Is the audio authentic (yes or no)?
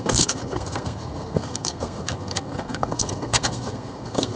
no